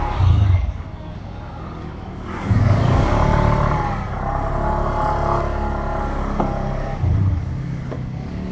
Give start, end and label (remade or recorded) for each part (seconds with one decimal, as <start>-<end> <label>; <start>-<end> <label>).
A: 0.0-3.2 remade; 3.2-7.3 recorded; 7.3-8.5 remade